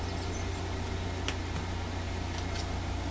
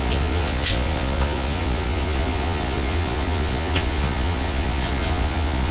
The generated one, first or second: second